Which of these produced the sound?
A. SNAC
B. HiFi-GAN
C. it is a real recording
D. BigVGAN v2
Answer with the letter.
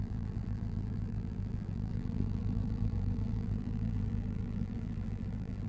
D